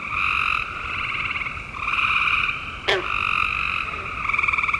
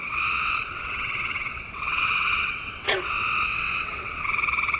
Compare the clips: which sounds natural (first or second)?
first